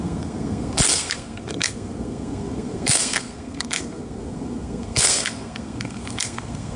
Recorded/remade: remade